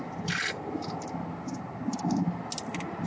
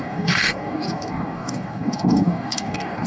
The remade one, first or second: second